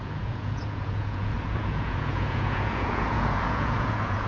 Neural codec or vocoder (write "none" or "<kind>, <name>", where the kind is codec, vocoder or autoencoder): vocoder, Vocos